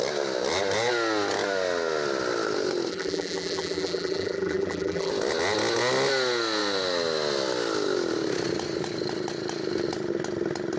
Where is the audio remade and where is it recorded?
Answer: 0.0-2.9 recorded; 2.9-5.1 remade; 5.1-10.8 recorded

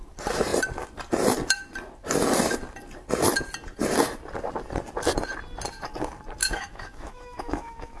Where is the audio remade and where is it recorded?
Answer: 0.0-6.4 recorded; 6.4-8.0 remade

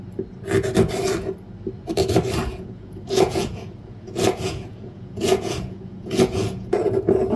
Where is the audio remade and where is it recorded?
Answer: 0.0-2.5 recorded; 2.5-6.9 remade; 6.9-7.4 recorded

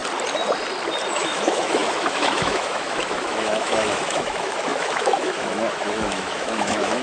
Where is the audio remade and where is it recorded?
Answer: 0.0-1.1 recorded; 1.1-7.0 remade

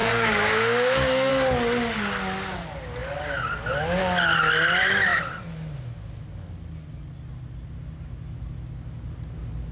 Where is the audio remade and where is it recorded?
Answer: 0.0-1.3 remade; 1.3-9.7 recorded

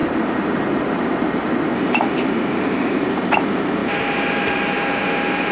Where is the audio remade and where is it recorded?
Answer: 0.0-3.8 remade; 3.8-4.3 recorded; 4.3-5.5 remade